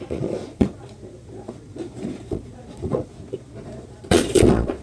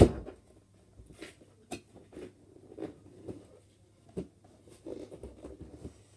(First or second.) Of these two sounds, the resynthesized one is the first